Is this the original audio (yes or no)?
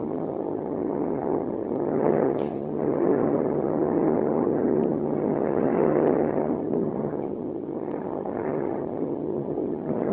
no